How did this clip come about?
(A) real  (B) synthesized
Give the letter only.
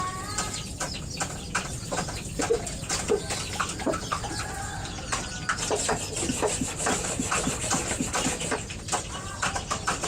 A